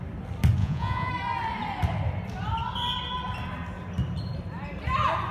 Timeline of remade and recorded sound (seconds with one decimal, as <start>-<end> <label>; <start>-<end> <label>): 0.0-0.6 recorded; 0.6-1.1 remade; 1.1-5.3 recorded